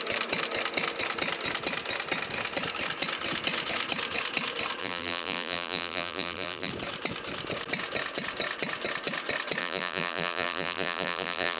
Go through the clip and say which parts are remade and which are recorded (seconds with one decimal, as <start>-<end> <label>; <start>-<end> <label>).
0.0-4.8 recorded; 4.8-6.7 remade; 6.7-9.6 recorded; 9.6-11.6 remade